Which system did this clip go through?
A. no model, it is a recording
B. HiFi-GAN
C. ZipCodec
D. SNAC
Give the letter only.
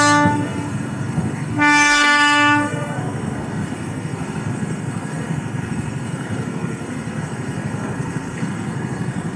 D